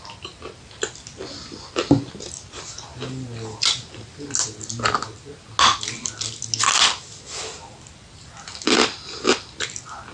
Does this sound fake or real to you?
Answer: real